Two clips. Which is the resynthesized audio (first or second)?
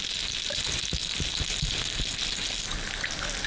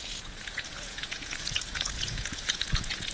second